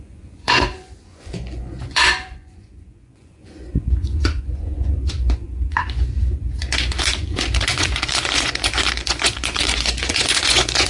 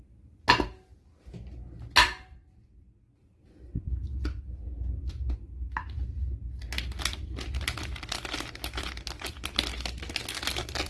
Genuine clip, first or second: second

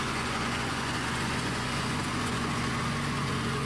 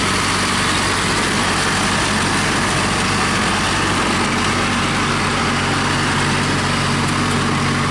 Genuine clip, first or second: second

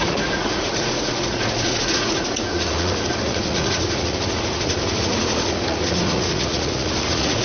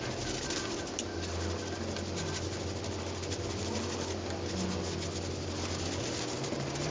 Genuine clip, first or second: second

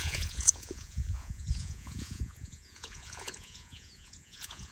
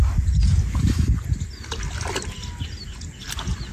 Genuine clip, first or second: second